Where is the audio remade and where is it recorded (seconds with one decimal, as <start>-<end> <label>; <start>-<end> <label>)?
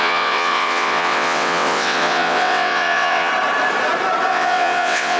0.0-3.3 remade; 3.3-4.3 recorded; 4.3-5.2 remade